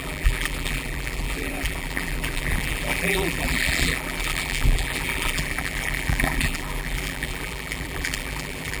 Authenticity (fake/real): fake